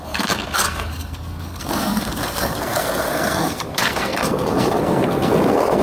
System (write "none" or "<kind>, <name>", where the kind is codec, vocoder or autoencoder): codec, SNAC